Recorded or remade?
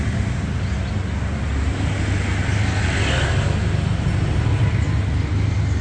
recorded